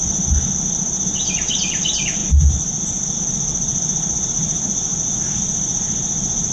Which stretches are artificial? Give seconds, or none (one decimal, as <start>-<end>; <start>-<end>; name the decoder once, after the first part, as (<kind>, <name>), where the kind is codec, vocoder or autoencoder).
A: none